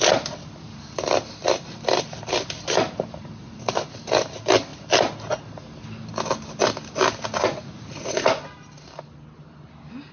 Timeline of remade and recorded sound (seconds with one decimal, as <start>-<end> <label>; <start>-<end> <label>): 0.0-3.4 recorded; 3.4-4.0 remade; 4.0-7.4 recorded; 7.4-8.2 remade; 8.2-10.1 recorded